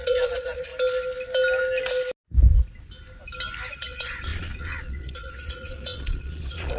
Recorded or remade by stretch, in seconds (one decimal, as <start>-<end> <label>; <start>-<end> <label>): 0.0-0.7 remade; 0.7-3.7 recorded; 3.7-6.8 remade